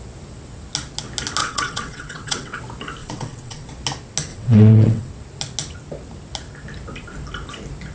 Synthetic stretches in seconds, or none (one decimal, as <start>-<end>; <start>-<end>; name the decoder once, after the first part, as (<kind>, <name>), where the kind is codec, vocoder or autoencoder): 1.4-2.6 (vocoder, WaveNeXt); 3.0-3.7; 4.3-5.1